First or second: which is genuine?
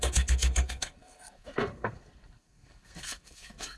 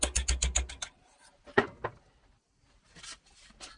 second